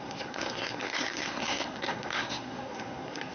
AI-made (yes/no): yes